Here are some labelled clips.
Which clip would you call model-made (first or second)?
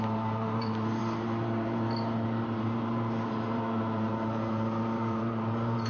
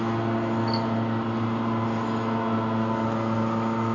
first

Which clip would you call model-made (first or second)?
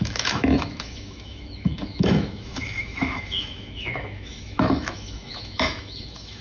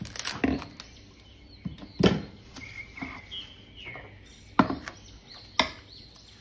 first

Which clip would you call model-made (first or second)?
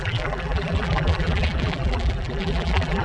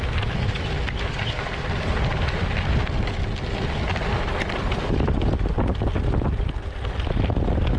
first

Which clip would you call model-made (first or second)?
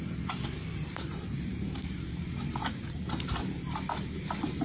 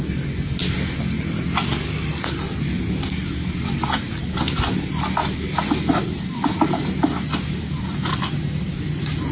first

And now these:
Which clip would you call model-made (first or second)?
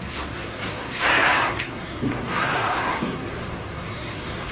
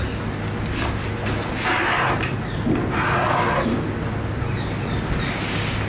first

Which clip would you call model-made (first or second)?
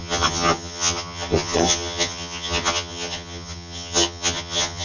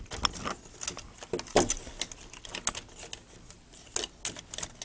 first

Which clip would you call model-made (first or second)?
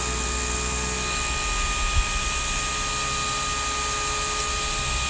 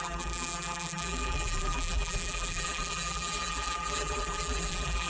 second